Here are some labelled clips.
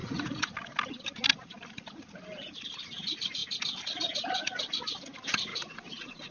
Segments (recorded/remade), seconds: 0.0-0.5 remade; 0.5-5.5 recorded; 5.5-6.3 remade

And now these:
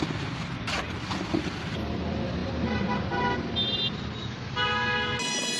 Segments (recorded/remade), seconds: 0.0-5.6 recorded

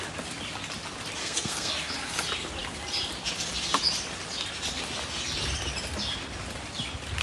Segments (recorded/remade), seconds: 0.0-1.2 recorded; 1.2-1.7 remade; 1.7-7.2 recorded

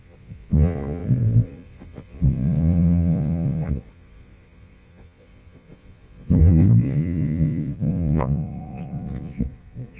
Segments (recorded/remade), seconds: 0.0-10.0 remade